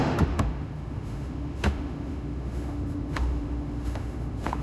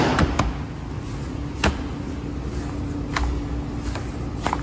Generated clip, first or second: first